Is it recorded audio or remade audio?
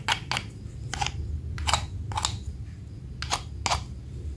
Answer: recorded